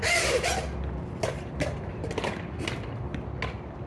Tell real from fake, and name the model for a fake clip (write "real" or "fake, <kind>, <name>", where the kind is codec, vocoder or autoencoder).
real